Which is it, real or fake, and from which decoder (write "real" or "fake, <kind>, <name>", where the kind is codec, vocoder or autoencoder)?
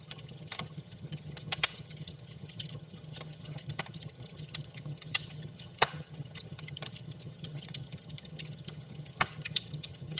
fake, vocoder, HiFi-GAN